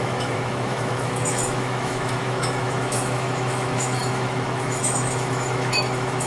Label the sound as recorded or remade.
remade